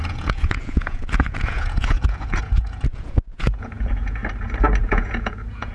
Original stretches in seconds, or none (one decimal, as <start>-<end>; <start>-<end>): 4.2-4.8